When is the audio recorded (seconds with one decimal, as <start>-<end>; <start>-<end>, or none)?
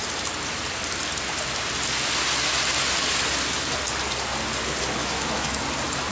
0.0-5.0; 5.6-6.1